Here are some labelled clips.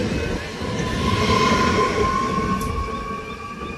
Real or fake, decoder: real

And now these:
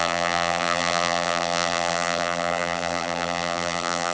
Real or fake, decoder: fake, vocoder, BigVGAN v2